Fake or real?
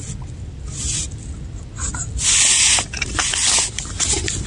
real